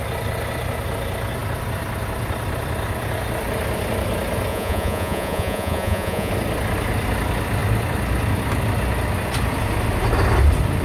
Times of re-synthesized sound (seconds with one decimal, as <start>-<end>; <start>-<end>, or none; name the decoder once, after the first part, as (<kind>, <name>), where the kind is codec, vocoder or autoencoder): 4.5-6.3 (vocoder, Vocos)